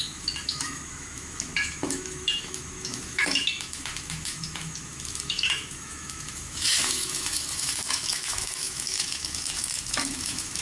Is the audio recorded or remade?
remade